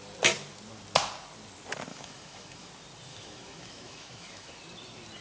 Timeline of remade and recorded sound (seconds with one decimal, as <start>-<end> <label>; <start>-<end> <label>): 0.0-1.9 recorded; 1.9-2.7 remade; 2.7-3.1 recorded; 3.1-4.5 remade; 4.5-5.2 recorded